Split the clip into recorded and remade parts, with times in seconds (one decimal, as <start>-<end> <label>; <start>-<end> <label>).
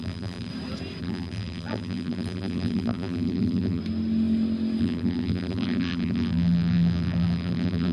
0.0-0.5 remade; 0.5-1.0 recorded; 1.0-3.8 remade; 3.8-4.8 recorded; 4.8-7.9 remade